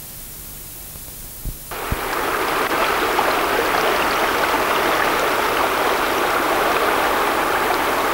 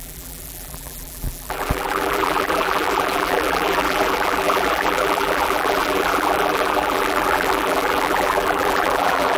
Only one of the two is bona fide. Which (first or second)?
first